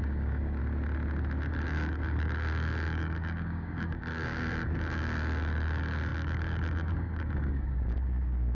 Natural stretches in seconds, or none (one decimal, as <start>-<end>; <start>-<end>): 0.6-1.5